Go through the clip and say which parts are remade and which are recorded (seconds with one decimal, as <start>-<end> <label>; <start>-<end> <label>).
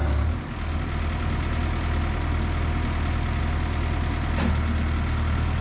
0.0-5.6 recorded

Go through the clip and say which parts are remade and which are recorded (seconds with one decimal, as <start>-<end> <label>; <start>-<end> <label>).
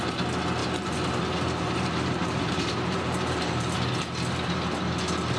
0.0-0.6 recorded; 0.6-3.8 remade; 3.8-5.4 recorded